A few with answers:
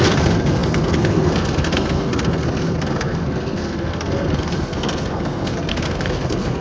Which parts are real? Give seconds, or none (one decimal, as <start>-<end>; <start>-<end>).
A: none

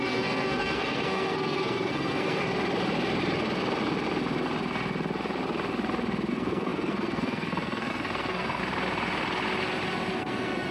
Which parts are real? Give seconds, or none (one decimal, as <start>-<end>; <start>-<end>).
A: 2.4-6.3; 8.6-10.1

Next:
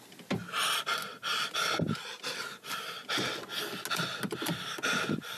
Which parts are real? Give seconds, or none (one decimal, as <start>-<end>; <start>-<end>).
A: 0.0-5.4

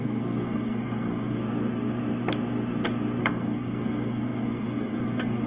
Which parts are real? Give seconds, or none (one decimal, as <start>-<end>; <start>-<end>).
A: 1.4-3.2

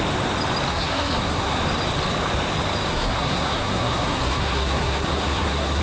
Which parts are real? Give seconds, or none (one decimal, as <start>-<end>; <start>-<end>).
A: 0.0-0.7; 1.6-2.9

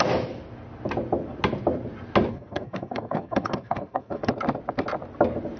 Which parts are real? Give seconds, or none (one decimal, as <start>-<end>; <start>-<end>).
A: 0.0-2.3; 4.3-5.6

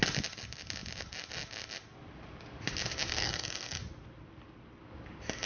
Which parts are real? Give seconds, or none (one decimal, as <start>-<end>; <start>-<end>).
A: 0.0-3.1; 3.8-5.5

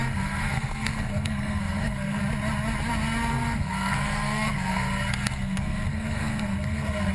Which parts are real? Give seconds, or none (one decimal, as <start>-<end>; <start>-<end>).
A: 2.2-3.3